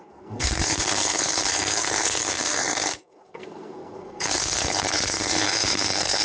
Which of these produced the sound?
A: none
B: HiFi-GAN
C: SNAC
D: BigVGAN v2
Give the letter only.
C